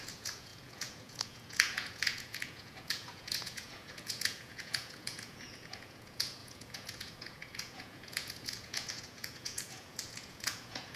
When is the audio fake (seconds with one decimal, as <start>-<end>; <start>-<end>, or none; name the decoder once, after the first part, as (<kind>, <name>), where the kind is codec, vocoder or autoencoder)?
0.0-11.0 (vocoder, Vocos)